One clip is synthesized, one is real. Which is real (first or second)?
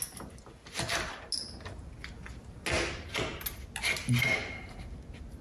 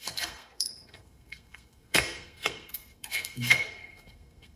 first